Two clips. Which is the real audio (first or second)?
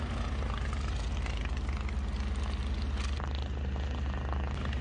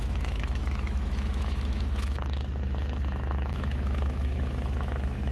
first